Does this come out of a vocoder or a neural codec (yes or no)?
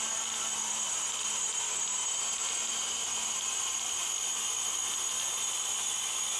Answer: yes